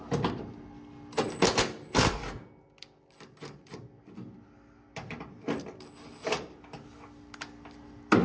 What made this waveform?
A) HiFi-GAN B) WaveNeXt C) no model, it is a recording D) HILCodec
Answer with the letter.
C